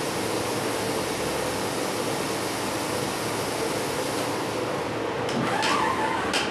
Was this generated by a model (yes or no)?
no